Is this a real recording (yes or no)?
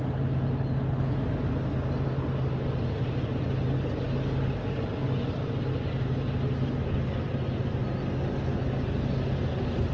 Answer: yes